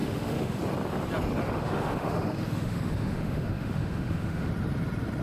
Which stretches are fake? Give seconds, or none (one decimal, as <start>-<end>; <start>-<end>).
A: 0.0-0.6; 1.4-4.5